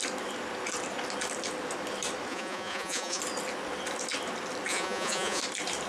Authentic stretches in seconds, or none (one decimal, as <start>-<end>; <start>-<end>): 0.0-2.3; 3.2-4.7; 5.4-5.9